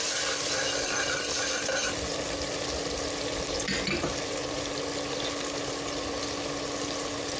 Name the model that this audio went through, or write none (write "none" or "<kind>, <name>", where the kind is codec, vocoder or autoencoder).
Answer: none